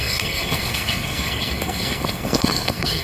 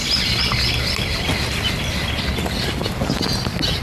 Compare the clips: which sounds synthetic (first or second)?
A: first